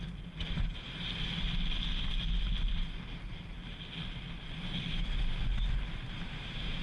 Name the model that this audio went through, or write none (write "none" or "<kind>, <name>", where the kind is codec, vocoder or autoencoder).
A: none